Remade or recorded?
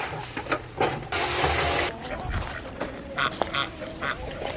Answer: recorded